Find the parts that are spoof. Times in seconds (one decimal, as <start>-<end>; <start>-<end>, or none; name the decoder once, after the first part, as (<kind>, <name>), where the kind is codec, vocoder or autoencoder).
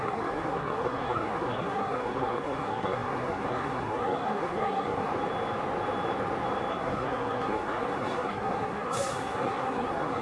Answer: 0.0-5.1 (codec, SNAC); 6.7-10.2